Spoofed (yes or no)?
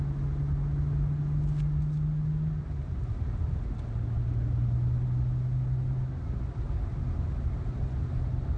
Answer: no